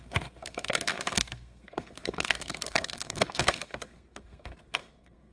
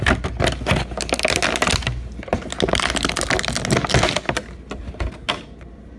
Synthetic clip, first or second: first